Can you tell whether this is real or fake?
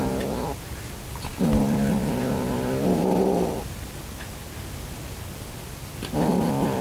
real